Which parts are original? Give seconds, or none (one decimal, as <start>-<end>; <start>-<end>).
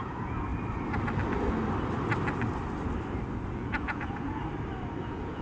0.5-3.5; 4.4-5.0